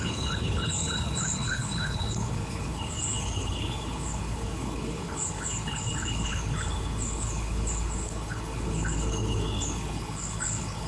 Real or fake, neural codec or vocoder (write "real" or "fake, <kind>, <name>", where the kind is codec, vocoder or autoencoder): fake, codec, HILCodec